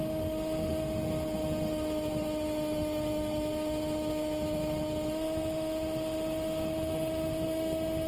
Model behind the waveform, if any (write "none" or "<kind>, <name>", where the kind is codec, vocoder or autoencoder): autoencoder, DAC-VAE